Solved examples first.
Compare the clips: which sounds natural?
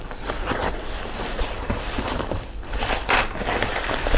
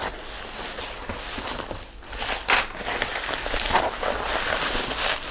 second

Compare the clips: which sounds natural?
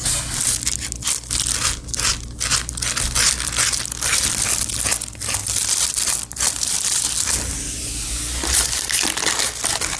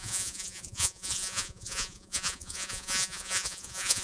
first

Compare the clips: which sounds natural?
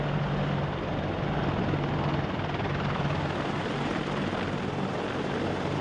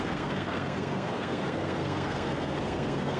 first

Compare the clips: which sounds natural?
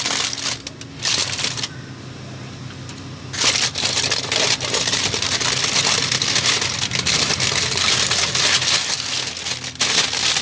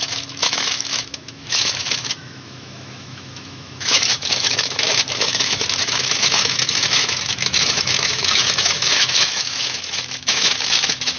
first